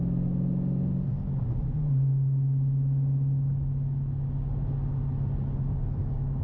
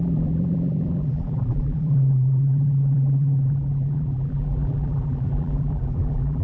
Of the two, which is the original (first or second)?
first